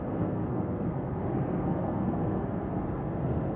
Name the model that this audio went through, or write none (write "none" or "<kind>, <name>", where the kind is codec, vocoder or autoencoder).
codec, SNAC